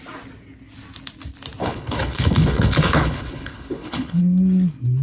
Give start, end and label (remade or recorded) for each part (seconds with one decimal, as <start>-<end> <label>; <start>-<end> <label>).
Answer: 0.0-1.6 recorded; 1.6-4.2 remade; 4.2-5.0 recorded